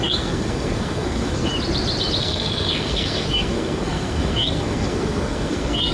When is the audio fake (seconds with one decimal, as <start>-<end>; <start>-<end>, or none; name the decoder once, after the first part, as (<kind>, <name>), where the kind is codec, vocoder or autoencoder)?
0.0-1.5 (codec, SNAC); 2.2-5.9